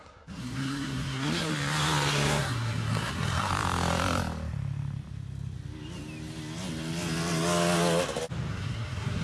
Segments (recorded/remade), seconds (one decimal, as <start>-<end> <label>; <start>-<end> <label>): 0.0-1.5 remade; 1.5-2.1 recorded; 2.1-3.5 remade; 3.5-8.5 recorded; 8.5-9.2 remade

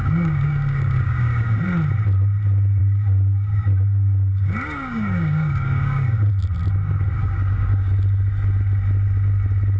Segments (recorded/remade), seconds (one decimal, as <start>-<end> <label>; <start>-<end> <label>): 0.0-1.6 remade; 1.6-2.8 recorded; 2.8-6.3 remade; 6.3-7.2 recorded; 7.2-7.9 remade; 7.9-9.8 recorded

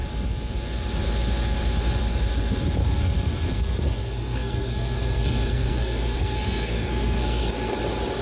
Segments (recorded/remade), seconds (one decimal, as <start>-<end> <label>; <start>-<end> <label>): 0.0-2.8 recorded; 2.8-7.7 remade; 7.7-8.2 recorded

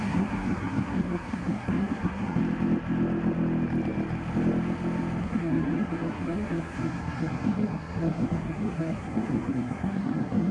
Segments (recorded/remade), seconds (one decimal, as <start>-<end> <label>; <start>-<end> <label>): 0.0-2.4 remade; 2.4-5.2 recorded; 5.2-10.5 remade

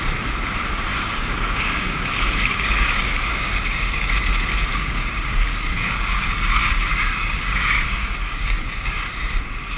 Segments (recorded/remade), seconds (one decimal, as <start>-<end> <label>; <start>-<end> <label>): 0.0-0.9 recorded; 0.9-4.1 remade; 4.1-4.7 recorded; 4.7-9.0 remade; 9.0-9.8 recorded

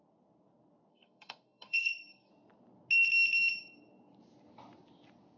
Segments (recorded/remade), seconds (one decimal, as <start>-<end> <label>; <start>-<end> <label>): 0.0-0.9 recorded; 0.9-2.3 remade; 2.3-5.4 recorded